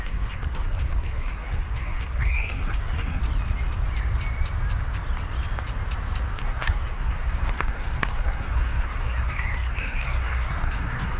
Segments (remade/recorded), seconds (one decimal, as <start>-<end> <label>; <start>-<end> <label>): 0.0-3.2 remade; 3.2-6.3 recorded; 6.3-11.2 remade